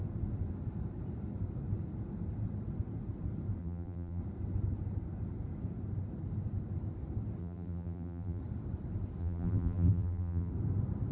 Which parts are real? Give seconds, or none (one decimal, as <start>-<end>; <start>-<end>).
0.0-3.6; 4.2-7.4; 8.4-9.2; 10.5-11.1